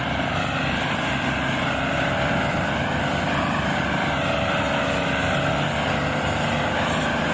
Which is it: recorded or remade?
recorded